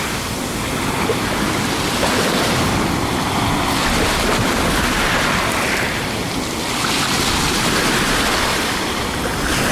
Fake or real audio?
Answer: real